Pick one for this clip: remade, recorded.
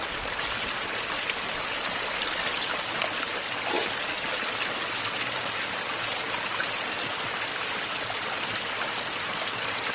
remade